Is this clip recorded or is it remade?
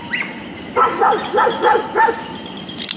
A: recorded